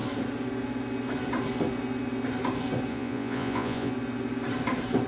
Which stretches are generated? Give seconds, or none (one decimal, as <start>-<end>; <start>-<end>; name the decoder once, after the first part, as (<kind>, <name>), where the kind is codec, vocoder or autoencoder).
2.9-3.9 (vocoder, Vocos)